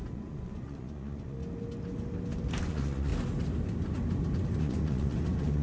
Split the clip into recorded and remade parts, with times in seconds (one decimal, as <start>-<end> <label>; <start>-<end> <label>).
0.0-1.4 remade; 1.4-2.6 recorded; 2.6-3.1 remade; 3.1-4.6 recorded; 4.6-5.6 remade